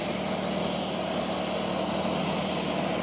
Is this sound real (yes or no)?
yes